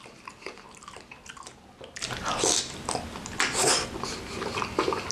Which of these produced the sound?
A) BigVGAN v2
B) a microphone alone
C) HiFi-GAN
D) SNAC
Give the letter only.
B